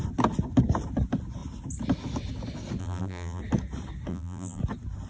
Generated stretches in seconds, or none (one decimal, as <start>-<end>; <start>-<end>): 2.8-3.4; 4.1-4.6